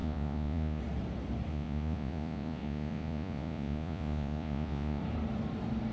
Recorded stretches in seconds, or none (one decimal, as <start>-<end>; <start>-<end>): 0.8-1.5; 5.0-5.9